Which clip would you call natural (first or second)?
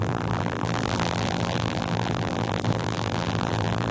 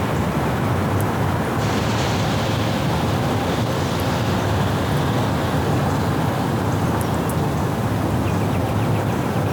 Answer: second